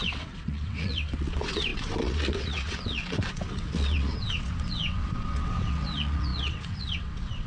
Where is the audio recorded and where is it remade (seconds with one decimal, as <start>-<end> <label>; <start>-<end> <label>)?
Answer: 0.0-7.5 remade